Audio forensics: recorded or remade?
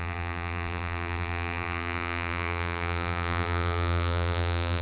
remade